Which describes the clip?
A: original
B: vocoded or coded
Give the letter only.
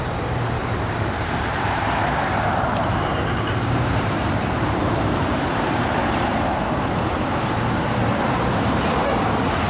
B